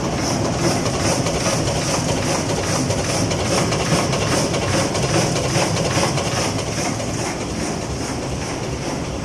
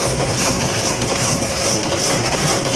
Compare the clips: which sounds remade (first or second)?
second